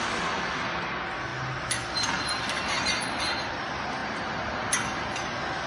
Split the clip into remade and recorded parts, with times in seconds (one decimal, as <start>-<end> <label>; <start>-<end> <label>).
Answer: 0.0-5.7 recorded